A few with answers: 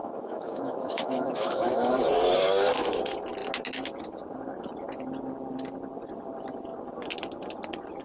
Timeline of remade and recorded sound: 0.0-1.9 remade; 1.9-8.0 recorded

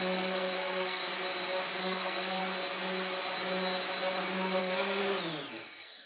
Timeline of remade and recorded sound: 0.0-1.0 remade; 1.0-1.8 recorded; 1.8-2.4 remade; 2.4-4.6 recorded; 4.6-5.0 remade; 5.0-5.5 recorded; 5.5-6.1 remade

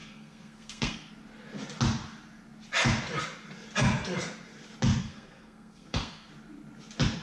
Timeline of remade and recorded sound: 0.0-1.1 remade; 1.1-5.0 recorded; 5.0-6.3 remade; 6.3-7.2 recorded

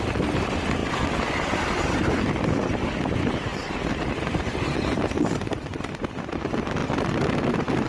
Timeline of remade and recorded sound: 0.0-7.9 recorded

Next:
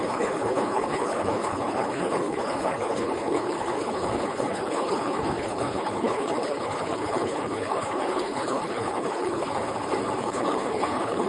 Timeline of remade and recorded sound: 0.0-9.6 remade; 9.6-10.2 recorded; 10.2-11.3 remade

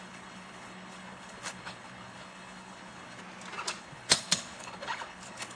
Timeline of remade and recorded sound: 0.0-3.2 remade; 3.2-3.8 recorded; 3.8-5.6 remade

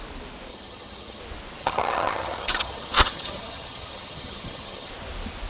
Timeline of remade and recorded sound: 0.0-0.5 recorded; 0.5-1.2 remade; 1.2-1.6 recorded; 1.6-4.9 remade; 4.9-5.5 recorded